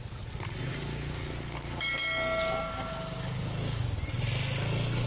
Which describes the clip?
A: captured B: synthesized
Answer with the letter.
A